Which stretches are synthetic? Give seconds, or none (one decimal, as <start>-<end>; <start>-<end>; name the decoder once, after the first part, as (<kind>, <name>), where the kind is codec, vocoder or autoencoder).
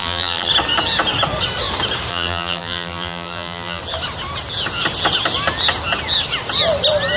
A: 0.0-0.5 (vocoder, BigVGAN v2); 2.1-3.8